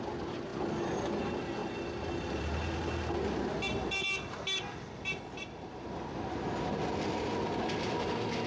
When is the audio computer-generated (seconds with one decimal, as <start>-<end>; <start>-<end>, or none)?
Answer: none